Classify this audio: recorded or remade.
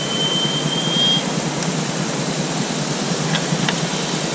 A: recorded